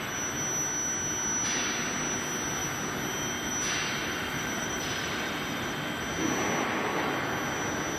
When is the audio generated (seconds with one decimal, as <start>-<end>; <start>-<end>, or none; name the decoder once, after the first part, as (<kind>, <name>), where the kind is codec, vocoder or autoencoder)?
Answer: 4.0-5.3 (vocoder, BigVGAN v2)